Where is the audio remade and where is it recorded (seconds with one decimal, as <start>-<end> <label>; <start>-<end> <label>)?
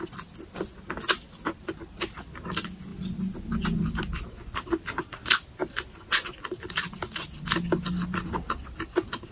0.0-9.3 recorded